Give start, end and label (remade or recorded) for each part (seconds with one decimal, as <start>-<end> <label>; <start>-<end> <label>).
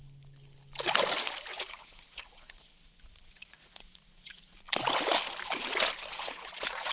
0.0-1.5 recorded; 1.5-4.6 remade; 4.6-6.1 recorded; 6.1-6.9 remade